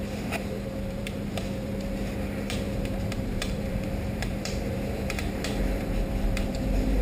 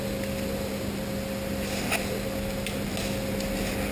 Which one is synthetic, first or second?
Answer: first